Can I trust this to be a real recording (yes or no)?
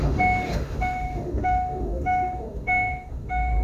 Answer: no